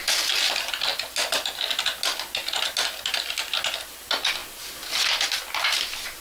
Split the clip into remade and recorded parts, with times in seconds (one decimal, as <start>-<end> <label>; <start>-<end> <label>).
0.0-6.2 recorded